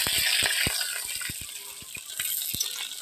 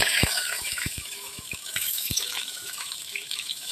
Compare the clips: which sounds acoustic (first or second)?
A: first